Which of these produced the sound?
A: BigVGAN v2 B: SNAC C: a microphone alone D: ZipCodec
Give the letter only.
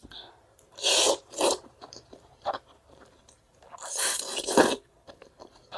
A